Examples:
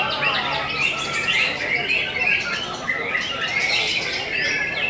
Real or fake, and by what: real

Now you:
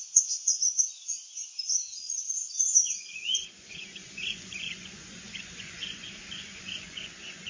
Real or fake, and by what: fake, vocoder, Vocos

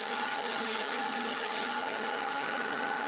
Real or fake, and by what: fake, vocoder, HiFi-GAN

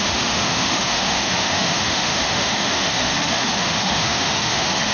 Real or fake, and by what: fake, autoencoder, DAC-VAE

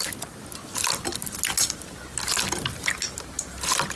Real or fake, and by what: real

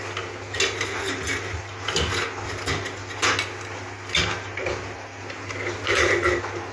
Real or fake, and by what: real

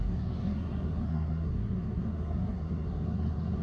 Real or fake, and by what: fake, codec, SNAC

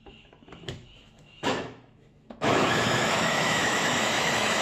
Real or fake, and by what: fake, autoencoder, DAC-VAE